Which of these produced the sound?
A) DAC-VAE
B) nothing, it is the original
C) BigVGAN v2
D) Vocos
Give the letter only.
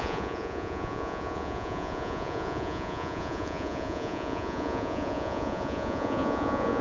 D